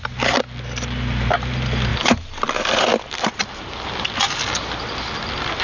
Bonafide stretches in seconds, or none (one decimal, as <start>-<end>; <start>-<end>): 0.0-5.6